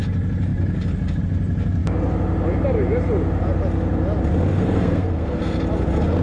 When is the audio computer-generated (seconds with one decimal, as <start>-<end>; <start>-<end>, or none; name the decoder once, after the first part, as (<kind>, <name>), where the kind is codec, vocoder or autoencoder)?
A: 4.5-5.4 (codec, SNAC)